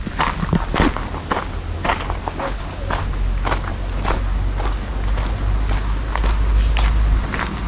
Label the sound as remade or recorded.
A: recorded